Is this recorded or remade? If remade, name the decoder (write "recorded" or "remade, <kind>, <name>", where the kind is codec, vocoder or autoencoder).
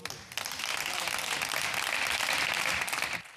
recorded